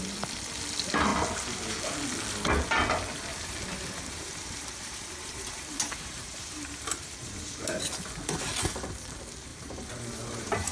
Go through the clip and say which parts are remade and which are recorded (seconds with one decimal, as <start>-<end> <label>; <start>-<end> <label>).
0.0-3.3 recorded; 3.3-7.8 remade; 7.8-9.5 recorded; 9.5-10.7 remade